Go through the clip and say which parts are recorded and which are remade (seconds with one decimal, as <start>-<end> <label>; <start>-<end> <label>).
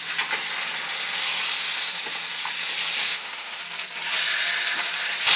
0.0-3.0 recorded; 3.0-3.6 remade; 3.6-5.4 recorded